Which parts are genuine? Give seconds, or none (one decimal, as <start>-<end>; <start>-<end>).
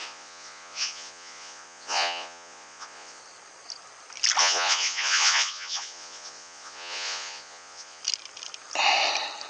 3.2-4.4; 8.0-9.5